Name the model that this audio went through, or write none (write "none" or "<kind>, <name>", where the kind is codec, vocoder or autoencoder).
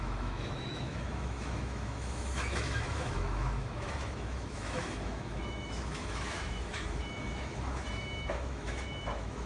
autoencoder, DAC-VAE